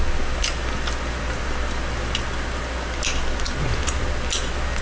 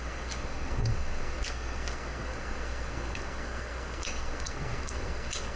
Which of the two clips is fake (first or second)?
second